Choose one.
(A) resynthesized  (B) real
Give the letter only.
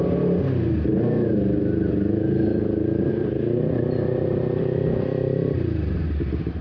B